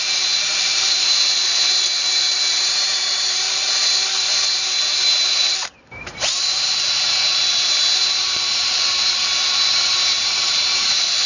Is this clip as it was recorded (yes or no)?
no